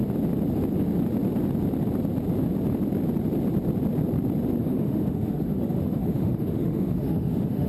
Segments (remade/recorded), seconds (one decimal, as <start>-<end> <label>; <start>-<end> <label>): 0.0-4.6 recorded; 4.6-7.7 remade